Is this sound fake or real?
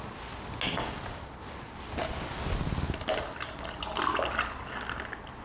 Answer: real